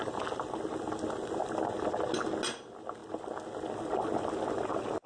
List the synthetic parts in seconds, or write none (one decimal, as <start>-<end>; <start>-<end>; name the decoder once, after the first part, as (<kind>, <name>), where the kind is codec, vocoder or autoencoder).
none